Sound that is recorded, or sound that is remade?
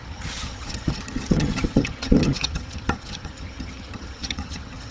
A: remade